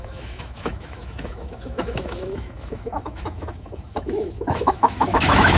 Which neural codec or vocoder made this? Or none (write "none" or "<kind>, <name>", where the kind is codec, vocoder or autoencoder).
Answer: autoencoder, DAC-VAE